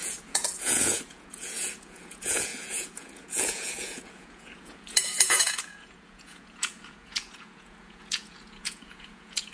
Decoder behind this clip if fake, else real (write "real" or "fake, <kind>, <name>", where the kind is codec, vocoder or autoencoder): fake, vocoder, Vocos